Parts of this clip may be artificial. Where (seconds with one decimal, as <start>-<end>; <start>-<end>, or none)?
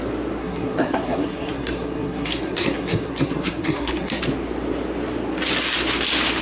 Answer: 0.4-4.2